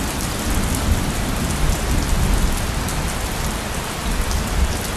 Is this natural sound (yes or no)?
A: yes